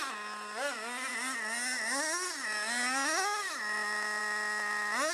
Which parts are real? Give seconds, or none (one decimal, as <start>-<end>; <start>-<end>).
0.0-5.1